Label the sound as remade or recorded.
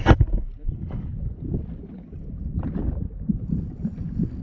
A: recorded